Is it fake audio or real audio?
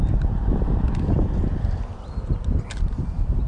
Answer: real